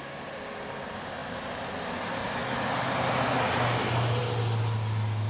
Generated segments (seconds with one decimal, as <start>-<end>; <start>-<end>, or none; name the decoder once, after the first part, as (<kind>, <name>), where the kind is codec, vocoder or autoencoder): none